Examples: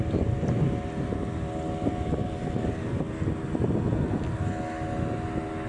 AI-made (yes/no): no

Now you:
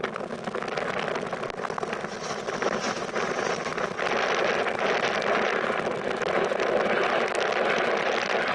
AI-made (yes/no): no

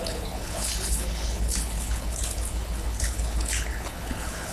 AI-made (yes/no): yes